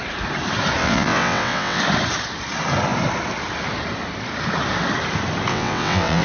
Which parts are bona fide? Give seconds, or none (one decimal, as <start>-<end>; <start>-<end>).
0.0-0.8; 1.8-5.5